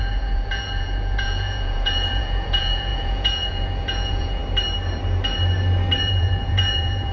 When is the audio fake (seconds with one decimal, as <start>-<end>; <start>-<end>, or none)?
0.0-4.4; 6.0-7.1